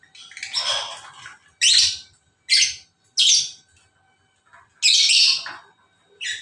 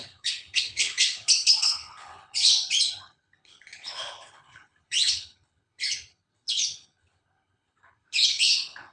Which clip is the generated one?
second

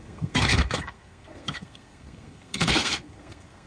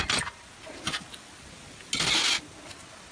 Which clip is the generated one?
first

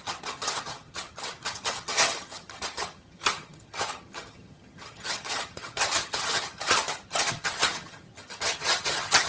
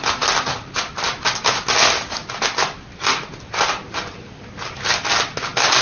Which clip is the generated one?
first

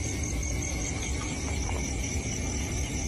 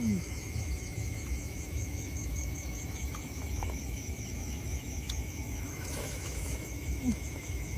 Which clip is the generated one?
second